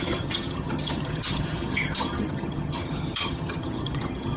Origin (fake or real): fake